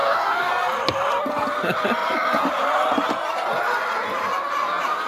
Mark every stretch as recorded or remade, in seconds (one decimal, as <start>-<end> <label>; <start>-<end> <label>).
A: 0.0-0.5 remade; 0.5-5.1 recorded